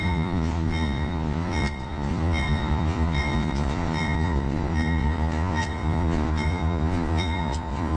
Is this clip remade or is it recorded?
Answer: remade